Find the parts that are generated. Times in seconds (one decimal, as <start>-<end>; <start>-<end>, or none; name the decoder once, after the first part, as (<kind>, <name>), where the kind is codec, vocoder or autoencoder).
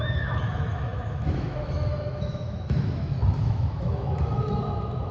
0.0-5.1 (autoencoder, DAC-VAE)